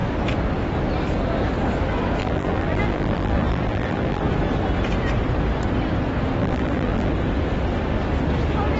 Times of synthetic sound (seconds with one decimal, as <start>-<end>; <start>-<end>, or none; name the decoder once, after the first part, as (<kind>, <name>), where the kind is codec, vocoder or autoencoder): 2.2-4.2 (vocoder, BigVGAN v2); 6.4-7.1